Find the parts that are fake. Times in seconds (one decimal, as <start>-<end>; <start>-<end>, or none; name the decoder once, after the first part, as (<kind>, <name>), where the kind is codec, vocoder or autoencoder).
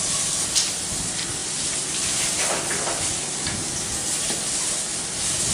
1.4-2.9 (vocoder, BigVGAN v2)